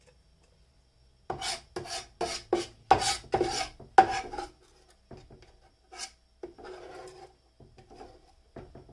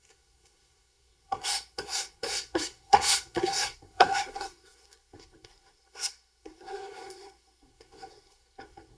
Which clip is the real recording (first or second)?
first